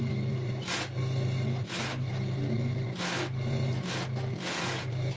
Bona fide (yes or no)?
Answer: yes